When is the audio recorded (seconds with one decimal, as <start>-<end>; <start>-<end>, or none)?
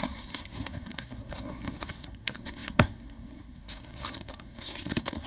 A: none